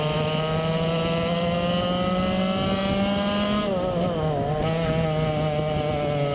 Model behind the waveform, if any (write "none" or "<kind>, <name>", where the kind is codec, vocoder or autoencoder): none